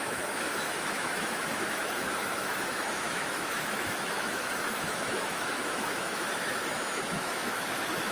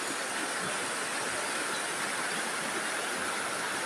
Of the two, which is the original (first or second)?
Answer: second